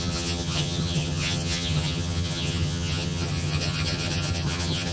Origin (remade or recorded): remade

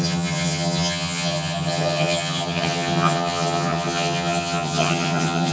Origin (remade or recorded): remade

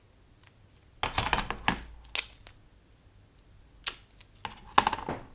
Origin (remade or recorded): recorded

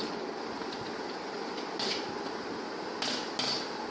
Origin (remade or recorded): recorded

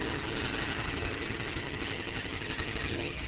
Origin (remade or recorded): remade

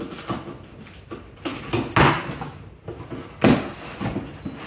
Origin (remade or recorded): recorded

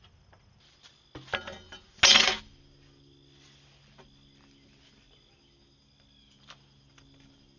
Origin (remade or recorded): recorded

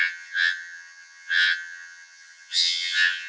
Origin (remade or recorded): remade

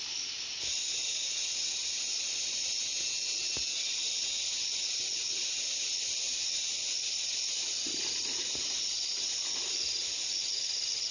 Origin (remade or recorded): recorded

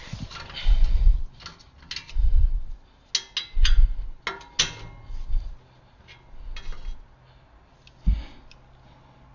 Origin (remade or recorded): recorded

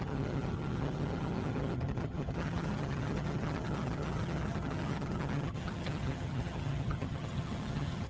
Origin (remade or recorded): remade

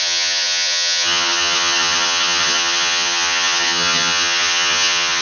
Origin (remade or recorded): remade